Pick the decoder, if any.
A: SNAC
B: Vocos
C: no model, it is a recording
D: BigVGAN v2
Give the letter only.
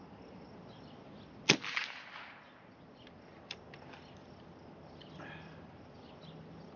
C